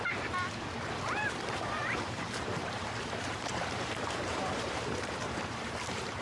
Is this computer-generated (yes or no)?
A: yes